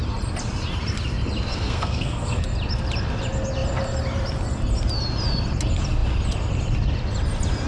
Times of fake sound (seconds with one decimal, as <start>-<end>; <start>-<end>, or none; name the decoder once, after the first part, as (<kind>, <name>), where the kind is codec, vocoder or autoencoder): 1.5-2.4 (codec, SNAC)